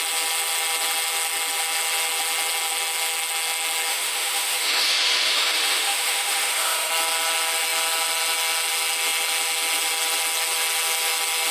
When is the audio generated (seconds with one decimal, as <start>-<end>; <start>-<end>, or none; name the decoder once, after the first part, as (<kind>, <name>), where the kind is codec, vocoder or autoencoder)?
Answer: 3.9-6.9 (autoencoder, DAC-VAE)